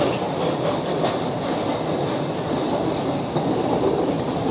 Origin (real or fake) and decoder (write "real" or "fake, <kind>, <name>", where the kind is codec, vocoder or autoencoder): real